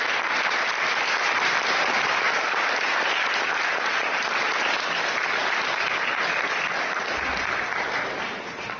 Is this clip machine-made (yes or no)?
no